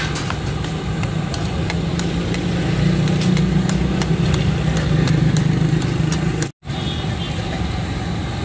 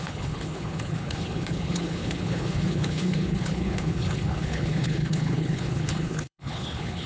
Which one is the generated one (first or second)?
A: second